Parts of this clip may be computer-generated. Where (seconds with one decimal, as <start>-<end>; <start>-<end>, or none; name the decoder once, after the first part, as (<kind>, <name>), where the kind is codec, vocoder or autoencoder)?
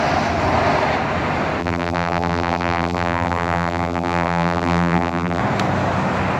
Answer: 1.6-5.4 (vocoder, BigVGAN v2)